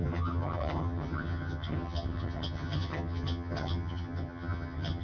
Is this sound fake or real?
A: fake